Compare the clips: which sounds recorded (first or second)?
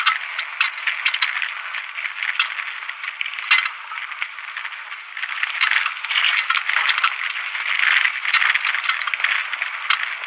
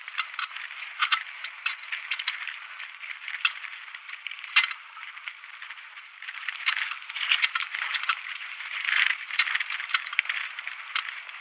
first